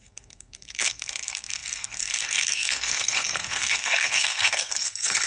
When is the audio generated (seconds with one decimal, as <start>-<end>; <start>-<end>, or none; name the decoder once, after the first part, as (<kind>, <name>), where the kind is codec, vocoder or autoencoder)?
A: 0.0-5.3 (codec, SNAC)